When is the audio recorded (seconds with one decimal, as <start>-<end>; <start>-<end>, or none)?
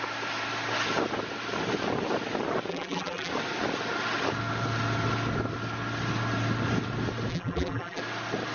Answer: 0.0-2.7; 3.3-7.3; 8.0-8.5